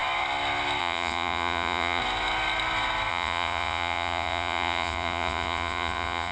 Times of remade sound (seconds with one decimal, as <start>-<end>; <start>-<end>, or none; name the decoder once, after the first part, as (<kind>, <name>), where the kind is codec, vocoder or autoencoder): 0.8-2.0 (vocoder, Vocos); 3.1-6.3